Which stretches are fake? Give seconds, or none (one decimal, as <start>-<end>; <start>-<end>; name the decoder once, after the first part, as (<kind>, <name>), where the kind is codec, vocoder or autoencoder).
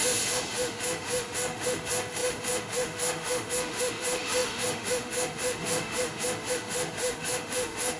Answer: 0.0-8.0 (autoencoder, DAC-VAE)